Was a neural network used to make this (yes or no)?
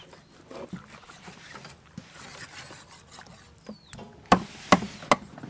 no